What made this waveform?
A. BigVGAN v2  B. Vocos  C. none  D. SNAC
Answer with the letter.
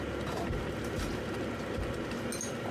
C